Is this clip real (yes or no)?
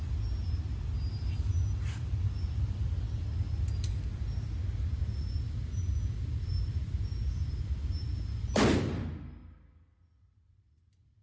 yes